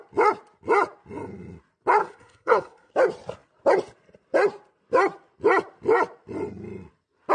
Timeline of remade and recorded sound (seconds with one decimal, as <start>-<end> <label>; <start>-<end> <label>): 0.0-2.0 recorded; 2.0-2.9 remade; 2.9-7.3 recorded